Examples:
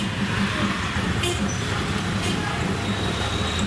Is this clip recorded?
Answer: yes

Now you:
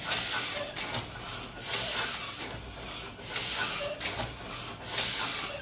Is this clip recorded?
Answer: yes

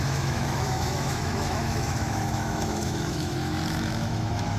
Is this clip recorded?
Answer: no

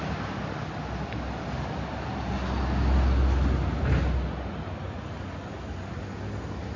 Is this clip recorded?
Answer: yes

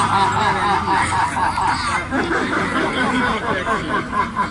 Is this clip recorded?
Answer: yes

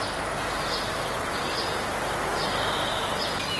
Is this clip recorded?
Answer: yes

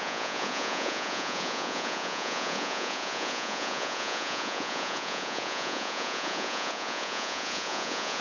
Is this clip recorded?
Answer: no